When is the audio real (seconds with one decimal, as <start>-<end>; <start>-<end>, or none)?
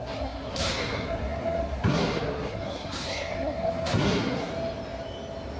4.5-5.6